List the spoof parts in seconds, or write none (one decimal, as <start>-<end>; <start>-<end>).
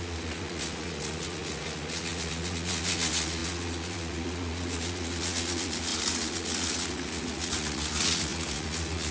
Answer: 0.0-9.1